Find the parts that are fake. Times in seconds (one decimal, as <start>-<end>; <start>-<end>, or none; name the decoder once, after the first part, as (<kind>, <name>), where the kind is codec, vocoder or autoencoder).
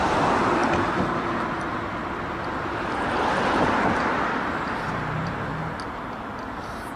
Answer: 0.0-5.5 (vocoder, BigVGAN v2)